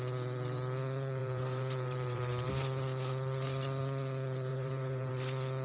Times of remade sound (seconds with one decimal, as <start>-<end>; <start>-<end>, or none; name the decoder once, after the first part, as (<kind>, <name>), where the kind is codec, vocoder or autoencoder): 1.2-2.5 (vocoder, BigVGAN v2); 4.5-5.1